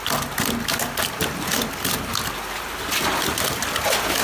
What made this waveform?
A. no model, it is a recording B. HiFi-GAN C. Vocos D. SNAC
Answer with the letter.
A